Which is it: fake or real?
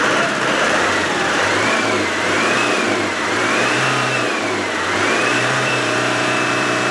fake